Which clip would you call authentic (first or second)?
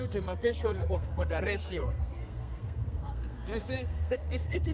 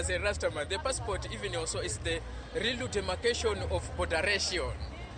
second